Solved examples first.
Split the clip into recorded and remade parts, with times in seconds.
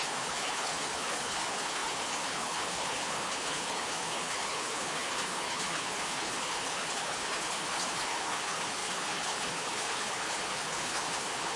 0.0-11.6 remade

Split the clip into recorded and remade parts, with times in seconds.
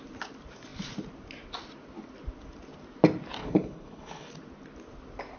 0.0-3.4 recorded; 3.4-4.3 remade; 4.3-5.4 recorded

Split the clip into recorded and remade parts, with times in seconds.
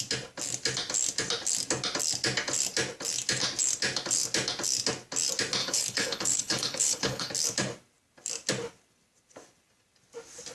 0.0-5.6 recorded; 5.6-7.3 remade; 7.3-10.5 recorded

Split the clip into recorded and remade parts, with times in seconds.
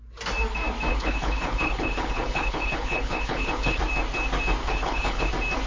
0.0-0.9 recorded; 0.9-3.8 remade; 3.8-4.6 recorded; 4.6-5.3 remade; 5.3-5.7 recorded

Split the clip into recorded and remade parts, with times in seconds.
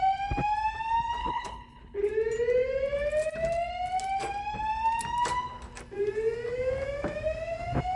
0.0-1.2 recorded; 1.2-2.1 remade; 2.1-8.0 recorded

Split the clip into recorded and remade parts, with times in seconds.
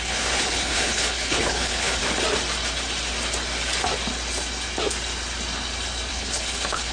0.0-2.0 remade; 2.0-6.1 recorded; 6.1-6.9 remade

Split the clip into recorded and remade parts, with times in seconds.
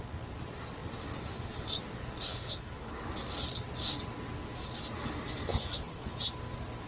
0.0-2.3 recorded; 2.3-3.1 remade; 3.1-5.5 recorded; 5.5-6.2 remade; 6.2-6.9 recorded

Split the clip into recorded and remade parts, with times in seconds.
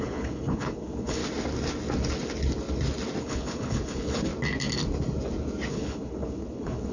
0.0-1.2 remade; 1.2-3.2 recorded; 3.2-4.3 remade; 4.3-5.7 recorded; 5.7-6.9 remade